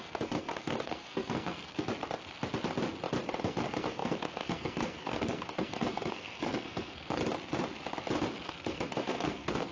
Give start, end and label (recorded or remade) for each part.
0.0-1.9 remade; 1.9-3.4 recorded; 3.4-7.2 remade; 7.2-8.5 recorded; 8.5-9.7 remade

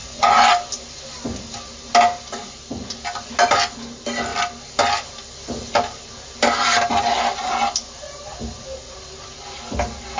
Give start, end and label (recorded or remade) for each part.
0.0-0.5 remade; 0.5-10.2 recorded

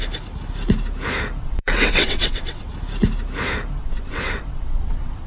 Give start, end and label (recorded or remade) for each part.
0.0-1.4 recorded; 1.4-2.7 remade; 2.7-3.8 recorded; 3.8-5.3 remade

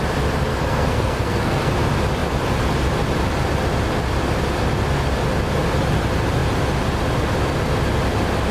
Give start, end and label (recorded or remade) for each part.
0.0-0.5 recorded; 0.5-1.7 remade; 1.7-8.5 recorded

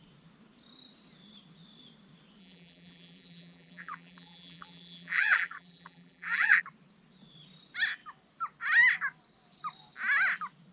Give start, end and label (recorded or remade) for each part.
0.0-2.4 recorded; 2.4-6.6 remade; 6.6-10.7 recorded